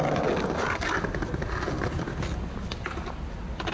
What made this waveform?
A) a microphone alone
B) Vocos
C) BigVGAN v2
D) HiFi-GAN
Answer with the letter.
A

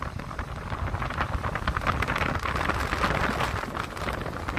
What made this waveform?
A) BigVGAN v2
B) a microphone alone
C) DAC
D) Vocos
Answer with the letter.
B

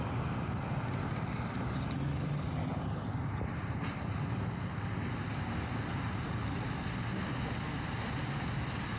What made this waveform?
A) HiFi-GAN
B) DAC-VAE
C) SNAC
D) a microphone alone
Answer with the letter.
D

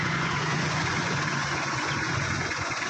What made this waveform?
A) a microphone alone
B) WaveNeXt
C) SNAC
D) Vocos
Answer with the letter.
D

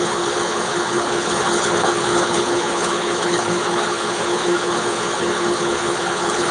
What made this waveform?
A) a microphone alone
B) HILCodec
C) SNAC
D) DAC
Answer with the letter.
B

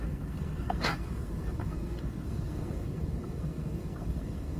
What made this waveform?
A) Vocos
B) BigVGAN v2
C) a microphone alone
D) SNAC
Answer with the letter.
D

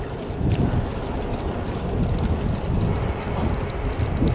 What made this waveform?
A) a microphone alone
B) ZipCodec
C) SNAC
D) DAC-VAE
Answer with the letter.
A